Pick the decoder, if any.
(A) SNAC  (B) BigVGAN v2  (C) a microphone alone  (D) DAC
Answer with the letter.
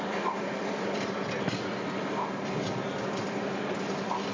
C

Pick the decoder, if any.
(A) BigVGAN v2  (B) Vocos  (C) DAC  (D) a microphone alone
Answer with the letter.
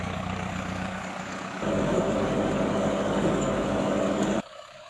C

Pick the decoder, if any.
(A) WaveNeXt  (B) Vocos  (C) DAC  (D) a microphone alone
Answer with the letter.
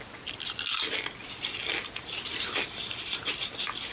D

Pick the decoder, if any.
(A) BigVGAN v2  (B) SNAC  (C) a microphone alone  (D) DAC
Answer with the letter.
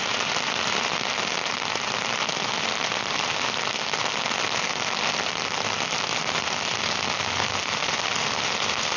C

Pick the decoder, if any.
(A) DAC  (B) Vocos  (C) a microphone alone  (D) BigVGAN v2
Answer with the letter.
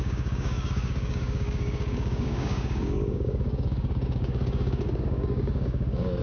A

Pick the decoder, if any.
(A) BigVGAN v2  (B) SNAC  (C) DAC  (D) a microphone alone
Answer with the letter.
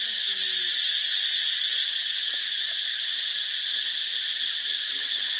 D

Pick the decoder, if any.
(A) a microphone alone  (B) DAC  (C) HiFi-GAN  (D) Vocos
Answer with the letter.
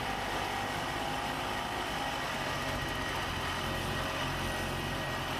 A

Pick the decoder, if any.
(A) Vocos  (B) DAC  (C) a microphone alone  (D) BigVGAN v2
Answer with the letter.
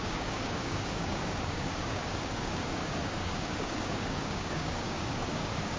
B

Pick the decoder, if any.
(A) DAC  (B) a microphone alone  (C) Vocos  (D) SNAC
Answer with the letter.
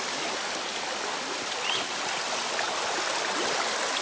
B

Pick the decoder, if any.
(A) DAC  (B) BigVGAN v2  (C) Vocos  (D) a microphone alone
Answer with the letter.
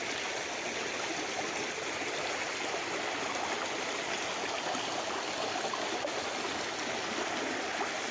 D